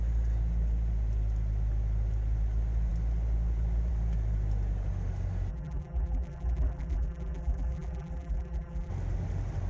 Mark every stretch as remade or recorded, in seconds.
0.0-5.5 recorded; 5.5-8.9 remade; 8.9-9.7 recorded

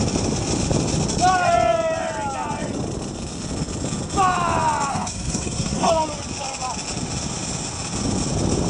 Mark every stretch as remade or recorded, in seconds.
0.0-4.9 recorded; 4.9-5.9 remade; 5.9-8.7 recorded